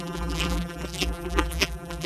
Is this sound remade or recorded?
remade